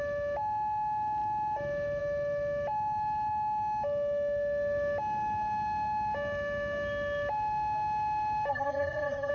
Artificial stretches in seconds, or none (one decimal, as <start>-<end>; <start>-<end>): 8.5-9.3